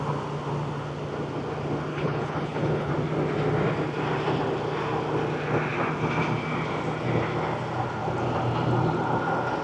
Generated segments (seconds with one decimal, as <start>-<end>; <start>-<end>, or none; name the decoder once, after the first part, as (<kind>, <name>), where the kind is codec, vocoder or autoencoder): 1.9-2.9 (codec, HILCodec)